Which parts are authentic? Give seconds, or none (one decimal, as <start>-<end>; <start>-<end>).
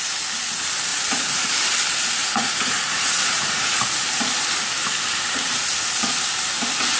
0.0-0.9; 1.5-2.2; 3.8-7.0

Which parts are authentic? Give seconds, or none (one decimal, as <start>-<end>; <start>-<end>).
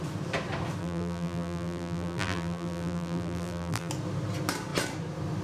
0.0-0.8; 3.9-5.4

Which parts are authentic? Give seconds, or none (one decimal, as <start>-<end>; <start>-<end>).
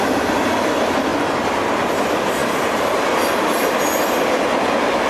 1.1-1.6; 2.4-5.1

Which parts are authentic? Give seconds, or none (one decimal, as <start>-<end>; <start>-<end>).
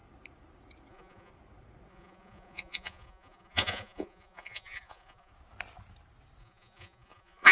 0.0-0.9; 1.3-1.9; 5.3-6.4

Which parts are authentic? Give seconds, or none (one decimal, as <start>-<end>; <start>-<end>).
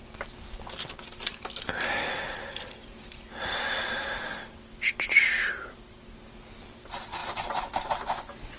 0.0-8.6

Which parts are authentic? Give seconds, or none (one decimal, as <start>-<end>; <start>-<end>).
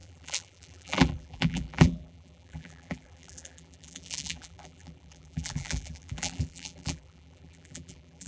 none